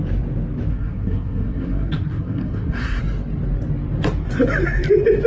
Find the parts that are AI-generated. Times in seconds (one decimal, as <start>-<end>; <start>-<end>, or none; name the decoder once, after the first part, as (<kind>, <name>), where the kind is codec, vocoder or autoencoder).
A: 0.7-3.0 (codec, SNAC)